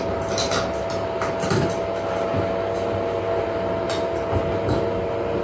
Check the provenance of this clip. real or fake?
real